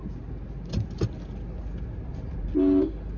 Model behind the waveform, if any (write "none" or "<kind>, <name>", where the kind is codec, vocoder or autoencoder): none